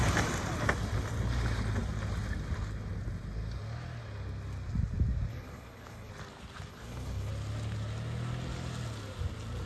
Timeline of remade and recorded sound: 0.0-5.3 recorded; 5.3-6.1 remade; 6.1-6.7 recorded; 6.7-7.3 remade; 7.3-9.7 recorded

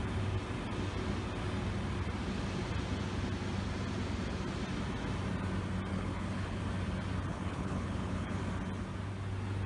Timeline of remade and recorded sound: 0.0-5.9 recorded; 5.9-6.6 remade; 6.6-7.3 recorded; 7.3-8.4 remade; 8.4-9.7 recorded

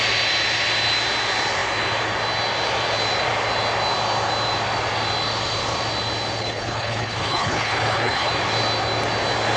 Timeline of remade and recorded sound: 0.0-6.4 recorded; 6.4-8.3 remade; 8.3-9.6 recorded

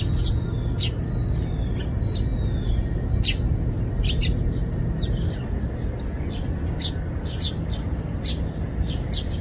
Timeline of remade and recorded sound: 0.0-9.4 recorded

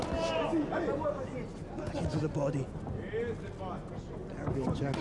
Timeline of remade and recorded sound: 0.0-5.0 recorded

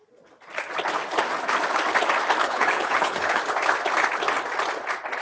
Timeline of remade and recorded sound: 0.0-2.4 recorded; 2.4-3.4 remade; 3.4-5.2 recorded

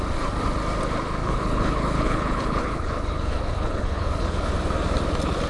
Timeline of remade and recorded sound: 0.0-1.2 recorded; 1.2-4.5 remade; 4.5-5.5 recorded